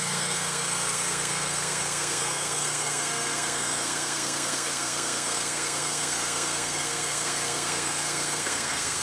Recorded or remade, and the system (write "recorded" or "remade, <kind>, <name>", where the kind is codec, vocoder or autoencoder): remade, codec, SNAC